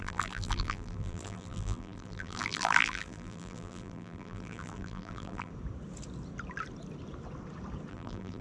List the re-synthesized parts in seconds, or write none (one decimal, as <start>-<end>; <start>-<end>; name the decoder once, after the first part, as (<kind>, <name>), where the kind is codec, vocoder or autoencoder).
0.0-5.5 (vocoder, BigVGAN v2); 7.9-8.4